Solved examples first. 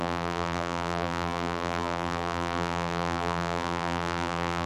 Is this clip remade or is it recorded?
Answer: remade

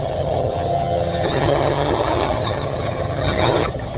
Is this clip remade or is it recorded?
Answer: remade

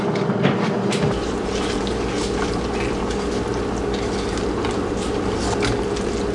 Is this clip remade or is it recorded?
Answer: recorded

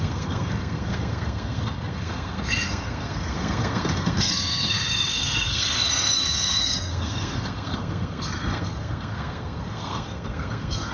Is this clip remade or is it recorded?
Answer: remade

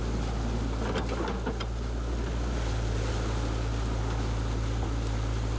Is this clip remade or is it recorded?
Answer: recorded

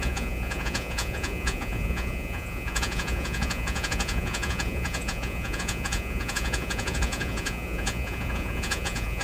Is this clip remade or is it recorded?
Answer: remade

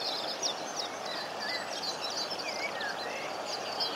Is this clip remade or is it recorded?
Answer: recorded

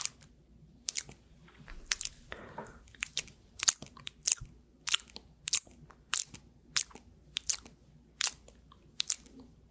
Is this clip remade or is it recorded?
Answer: recorded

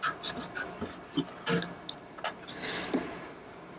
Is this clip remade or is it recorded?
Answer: recorded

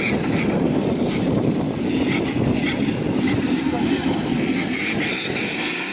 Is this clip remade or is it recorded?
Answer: recorded